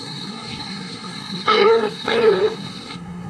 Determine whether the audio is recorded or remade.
remade